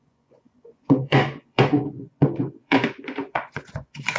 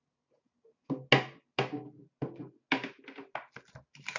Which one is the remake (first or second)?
first